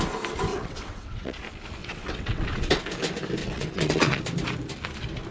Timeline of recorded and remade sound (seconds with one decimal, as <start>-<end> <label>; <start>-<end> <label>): 0.0-0.5 recorded; 0.5-1.4 remade; 1.4-1.8 recorded; 1.8-2.8 remade; 2.8-3.4 recorded; 3.4-4.2 remade; 4.2-5.3 recorded

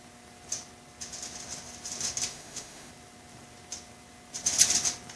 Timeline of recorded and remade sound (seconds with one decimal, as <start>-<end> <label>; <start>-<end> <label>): 0.0-2.3 recorded; 2.3-2.9 remade; 2.9-5.2 recorded

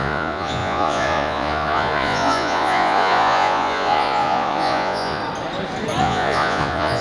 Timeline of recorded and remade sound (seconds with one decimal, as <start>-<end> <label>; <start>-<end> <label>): 0.0-5.2 remade; 5.2-6.0 recorded; 6.0-7.0 remade

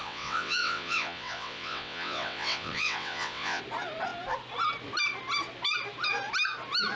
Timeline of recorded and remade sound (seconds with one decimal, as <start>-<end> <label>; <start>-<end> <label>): 0.0-3.6 remade; 3.6-7.0 recorded

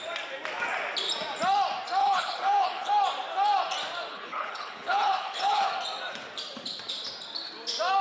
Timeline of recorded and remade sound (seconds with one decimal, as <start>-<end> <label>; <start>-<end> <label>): 0.0-2.0 recorded; 2.0-2.9 remade; 2.9-4.1 recorded; 4.1-5.7 remade; 5.7-8.0 recorded

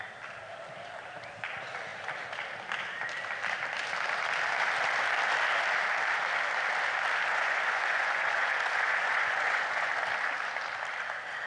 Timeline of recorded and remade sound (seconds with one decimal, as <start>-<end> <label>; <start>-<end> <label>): 0.0-7.3 recorded; 7.3-9.9 remade; 9.9-11.5 recorded

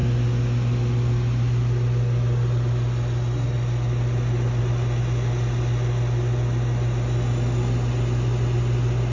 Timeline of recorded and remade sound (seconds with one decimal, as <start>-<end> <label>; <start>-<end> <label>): 0.0-9.1 recorded